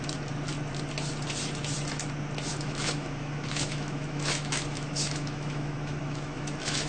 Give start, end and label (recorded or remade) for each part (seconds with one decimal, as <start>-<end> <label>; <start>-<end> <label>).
0.0-2.5 recorded; 2.5-6.9 remade